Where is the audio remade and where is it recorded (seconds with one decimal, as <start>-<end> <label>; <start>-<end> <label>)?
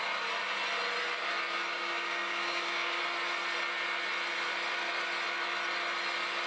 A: 0.0-1.7 recorded; 1.7-3.0 remade; 3.0-6.5 recorded